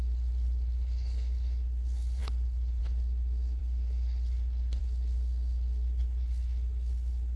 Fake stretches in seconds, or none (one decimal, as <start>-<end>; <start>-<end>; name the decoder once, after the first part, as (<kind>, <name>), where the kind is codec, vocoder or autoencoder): 0.0-7.4 (codec, HILCodec)